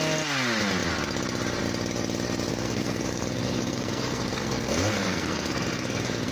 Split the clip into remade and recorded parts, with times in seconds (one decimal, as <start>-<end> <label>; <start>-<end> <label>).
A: 0.0-2.5 recorded; 2.5-6.3 remade